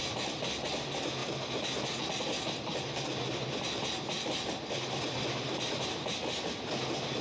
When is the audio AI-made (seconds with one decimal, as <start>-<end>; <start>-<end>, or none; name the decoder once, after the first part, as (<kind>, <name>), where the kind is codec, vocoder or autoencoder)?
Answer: none